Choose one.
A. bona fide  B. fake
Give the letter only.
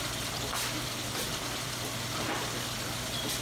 A